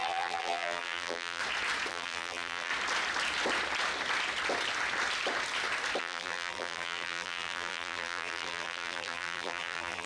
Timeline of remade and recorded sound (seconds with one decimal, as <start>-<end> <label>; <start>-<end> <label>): 0.0-1.4 remade; 1.4-1.9 recorded; 1.9-2.7 remade; 2.7-6.0 recorded; 6.0-10.1 remade